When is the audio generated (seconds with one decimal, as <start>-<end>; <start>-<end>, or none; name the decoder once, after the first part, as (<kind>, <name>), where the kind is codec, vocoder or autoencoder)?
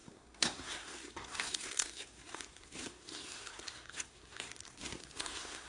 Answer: 0.0-5.7 (codec, SNAC)